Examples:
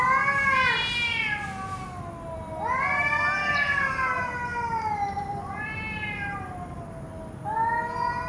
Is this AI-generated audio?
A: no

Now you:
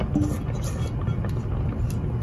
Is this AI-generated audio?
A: no